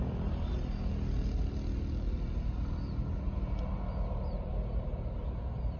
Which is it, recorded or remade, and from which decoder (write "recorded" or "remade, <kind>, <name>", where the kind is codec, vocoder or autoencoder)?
recorded